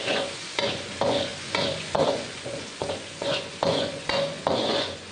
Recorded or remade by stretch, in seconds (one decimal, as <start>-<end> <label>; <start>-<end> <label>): 0.0-5.1 remade